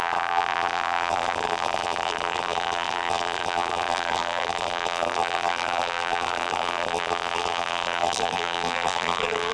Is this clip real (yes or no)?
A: no